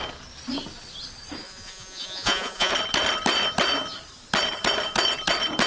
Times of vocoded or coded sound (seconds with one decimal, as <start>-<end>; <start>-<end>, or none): 1.4-2.7